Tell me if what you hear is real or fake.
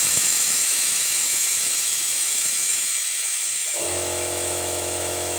fake